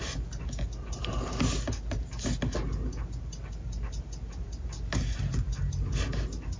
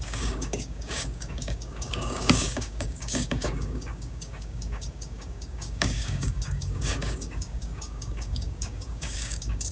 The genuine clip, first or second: first